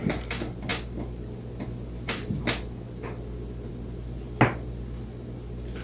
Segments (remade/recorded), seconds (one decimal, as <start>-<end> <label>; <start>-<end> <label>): 0.0-5.8 recorded